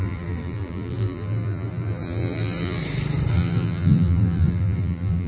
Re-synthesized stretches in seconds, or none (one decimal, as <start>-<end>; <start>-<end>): 0.0-2.8; 3.3-5.3